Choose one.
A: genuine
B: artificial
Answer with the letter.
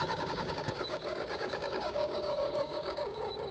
B